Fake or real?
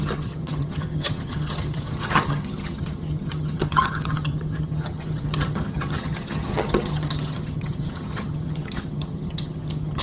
fake